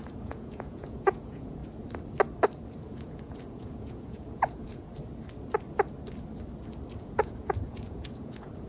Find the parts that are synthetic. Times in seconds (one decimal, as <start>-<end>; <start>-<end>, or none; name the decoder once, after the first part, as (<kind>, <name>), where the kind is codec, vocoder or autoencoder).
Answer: 0.0-1.6 (vocoder, Vocos); 2.8-4.9; 7.0-8.7